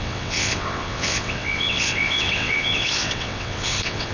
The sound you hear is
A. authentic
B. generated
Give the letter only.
B